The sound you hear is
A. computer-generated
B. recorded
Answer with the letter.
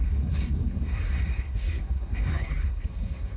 A